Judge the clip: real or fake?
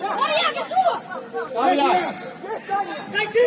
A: fake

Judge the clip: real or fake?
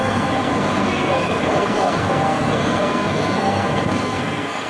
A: fake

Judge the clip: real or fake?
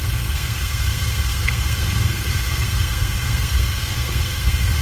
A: fake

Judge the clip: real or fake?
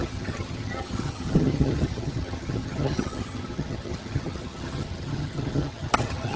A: fake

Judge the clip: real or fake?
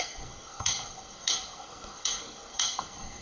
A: fake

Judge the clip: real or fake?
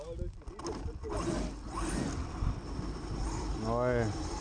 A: real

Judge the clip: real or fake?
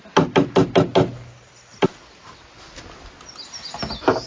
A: real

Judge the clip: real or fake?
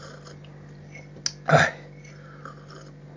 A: real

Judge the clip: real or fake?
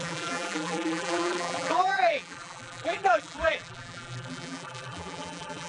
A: fake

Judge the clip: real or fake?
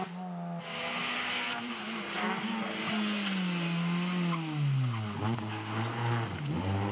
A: real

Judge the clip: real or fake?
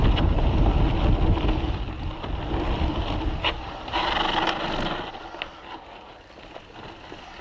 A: real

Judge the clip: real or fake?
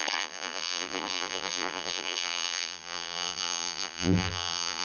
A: fake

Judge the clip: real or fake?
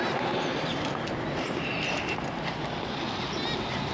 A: real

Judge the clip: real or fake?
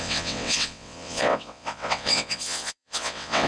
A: fake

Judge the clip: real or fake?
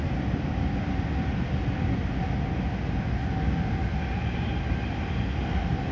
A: real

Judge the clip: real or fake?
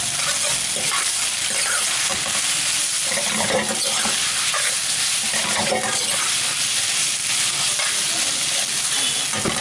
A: real